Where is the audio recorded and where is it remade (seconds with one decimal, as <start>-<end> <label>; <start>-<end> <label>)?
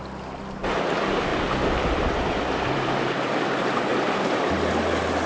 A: 0.0-1.3 recorded; 1.3-3.5 remade; 3.5-3.9 recorded; 3.9-4.4 remade; 4.4-5.3 recorded